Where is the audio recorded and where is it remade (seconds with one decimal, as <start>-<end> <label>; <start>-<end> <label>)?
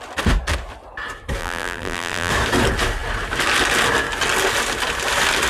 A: 0.0-1.4 recorded; 1.4-2.3 remade; 2.3-5.5 recorded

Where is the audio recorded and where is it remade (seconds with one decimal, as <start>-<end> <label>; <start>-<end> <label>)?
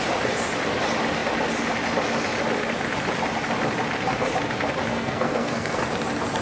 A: 0.0-4.9 recorded; 4.9-5.8 remade; 5.8-6.4 recorded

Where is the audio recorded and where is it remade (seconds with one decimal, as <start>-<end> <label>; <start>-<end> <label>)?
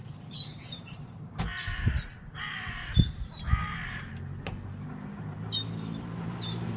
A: 0.0-2.8 remade; 2.8-5.2 recorded; 5.2-6.8 remade